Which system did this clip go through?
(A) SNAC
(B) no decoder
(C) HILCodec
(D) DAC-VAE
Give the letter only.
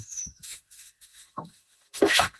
D